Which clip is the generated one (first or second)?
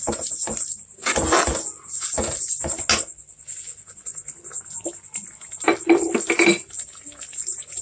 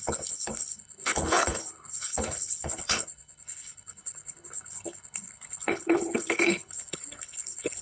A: second